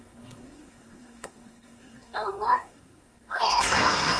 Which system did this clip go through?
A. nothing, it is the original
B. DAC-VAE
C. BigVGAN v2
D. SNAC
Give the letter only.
D